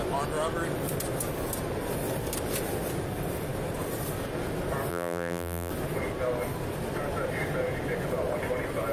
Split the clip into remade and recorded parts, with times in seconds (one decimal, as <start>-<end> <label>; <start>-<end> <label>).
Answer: 0.0-4.9 recorded; 4.9-5.7 remade; 5.7-8.9 recorded